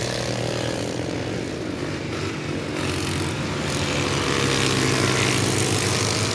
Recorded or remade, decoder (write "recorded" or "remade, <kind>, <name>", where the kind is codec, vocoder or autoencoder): recorded